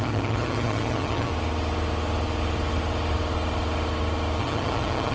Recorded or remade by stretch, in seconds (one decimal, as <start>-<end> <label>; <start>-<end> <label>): 0.0-1.3 remade; 1.3-4.4 recorded; 4.4-5.1 remade